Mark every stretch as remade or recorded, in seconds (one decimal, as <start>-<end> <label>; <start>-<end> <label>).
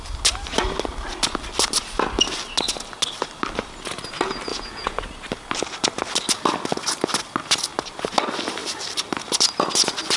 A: 0.0-4.5 recorded; 4.5-5.0 remade; 5.0-10.2 recorded